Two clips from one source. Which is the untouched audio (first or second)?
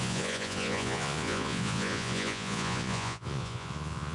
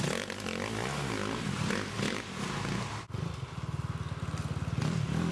second